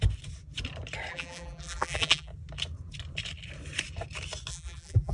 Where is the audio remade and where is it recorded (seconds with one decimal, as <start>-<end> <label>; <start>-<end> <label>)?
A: 0.0-1.1 recorded; 1.1-2.3 remade; 2.3-4.5 recorded; 4.5-5.1 remade

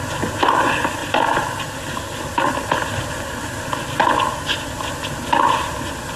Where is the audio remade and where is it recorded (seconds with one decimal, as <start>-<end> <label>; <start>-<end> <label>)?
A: 0.0-1.0 recorded; 1.0-2.0 remade; 2.0-6.2 recorded